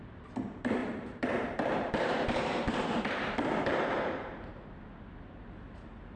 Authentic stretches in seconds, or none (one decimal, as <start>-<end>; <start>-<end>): 0.0-0.8; 4.5-6.2